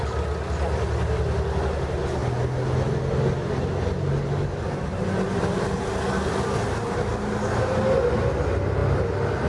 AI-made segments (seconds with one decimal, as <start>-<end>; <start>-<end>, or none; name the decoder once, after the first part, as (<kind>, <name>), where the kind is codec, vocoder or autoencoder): none